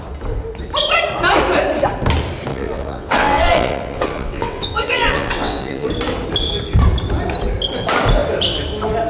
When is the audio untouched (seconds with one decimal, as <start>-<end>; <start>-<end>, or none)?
0.0-2.5; 5.9-9.1